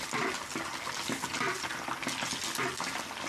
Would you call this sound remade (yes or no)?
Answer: no